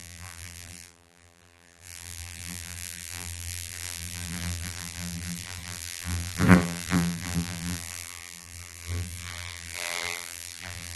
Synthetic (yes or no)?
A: yes